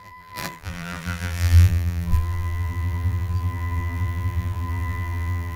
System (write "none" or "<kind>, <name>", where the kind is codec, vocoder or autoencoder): vocoder, BigVGAN v2